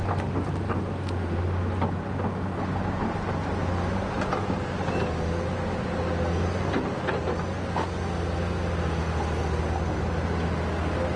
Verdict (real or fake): real